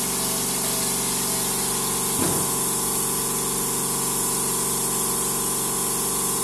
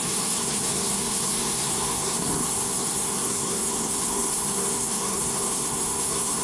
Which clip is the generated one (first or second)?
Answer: second